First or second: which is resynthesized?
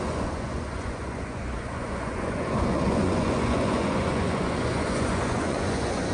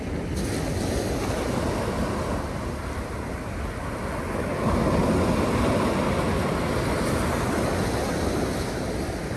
first